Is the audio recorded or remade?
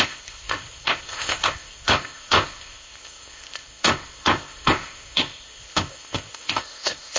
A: remade